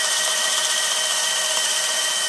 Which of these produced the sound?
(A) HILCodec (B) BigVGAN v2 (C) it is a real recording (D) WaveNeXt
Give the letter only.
C